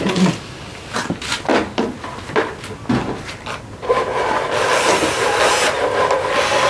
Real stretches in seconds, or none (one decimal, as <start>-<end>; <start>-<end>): 0.0-6.7